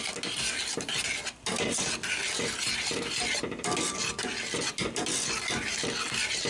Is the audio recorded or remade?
recorded